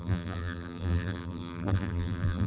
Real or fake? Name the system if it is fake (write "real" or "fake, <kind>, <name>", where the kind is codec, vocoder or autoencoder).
fake, vocoder, BigVGAN v2